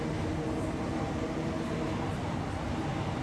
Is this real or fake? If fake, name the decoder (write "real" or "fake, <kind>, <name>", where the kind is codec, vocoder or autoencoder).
real